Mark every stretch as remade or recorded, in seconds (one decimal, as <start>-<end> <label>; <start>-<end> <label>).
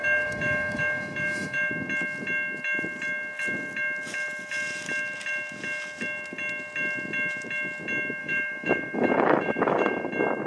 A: 0.0-1.7 remade; 1.7-8.2 recorded; 8.2-10.1 remade; 10.1-10.5 recorded